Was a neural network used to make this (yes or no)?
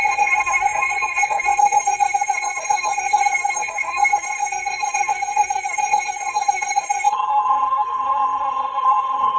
yes